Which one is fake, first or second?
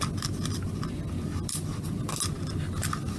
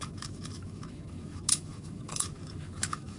second